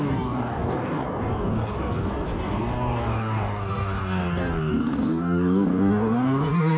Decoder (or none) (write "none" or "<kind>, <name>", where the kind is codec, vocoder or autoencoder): codec, DAC